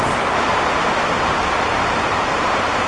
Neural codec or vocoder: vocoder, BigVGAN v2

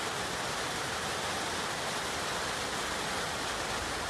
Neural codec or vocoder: none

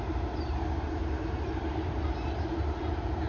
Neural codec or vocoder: vocoder, BigVGAN v2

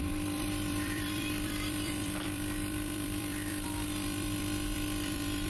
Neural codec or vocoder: vocoder, BigVGAN v2